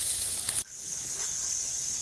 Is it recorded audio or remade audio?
remade